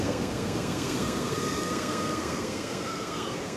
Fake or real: fake